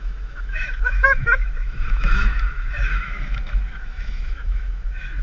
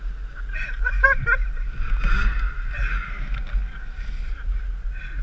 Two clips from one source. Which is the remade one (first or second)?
first